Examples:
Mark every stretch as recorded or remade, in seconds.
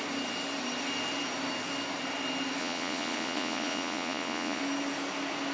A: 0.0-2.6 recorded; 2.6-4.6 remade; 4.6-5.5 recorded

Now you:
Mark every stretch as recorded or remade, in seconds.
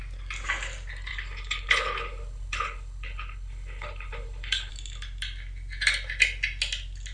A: 0.0-1.1 recorded; 1.1-4.7 remade; 4.7-7.1 recorded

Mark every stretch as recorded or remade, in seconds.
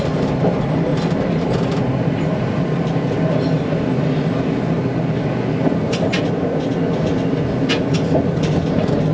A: 0.0-0.9 recorded; 0.9-2.7 remade; 2.7-6.1 recorded; 6.1-6.6 remade; 6.6-9.1 recorded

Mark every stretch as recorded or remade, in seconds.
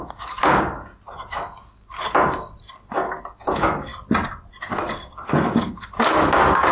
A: 0.0-0.9 remade; 0.9-3.2 recorded; 3.2-3.9 remade; 3.9-4.6 recorded; 4.6-6.7 remade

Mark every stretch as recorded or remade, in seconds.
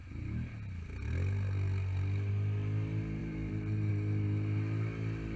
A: 0.0-3.2 recorded; 3.2-3.9 remade; 3.9-5.4 recorded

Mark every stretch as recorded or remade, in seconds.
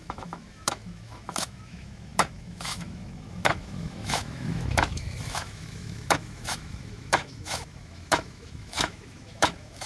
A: 0.0-9.9 remade